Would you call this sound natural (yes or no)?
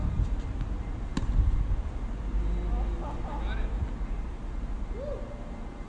yes